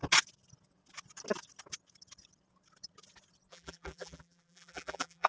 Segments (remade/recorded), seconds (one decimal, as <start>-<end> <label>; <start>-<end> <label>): 0.0-3.5 recorded; 3.5-5.3 remade